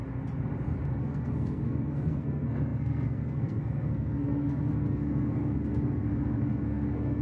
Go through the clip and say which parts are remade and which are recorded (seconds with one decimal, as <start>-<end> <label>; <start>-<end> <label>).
0.0-1.0 recorded; 1.0-7.2 remade